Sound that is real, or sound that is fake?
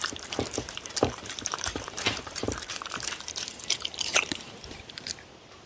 fake